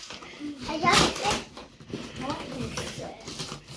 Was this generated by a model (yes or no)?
no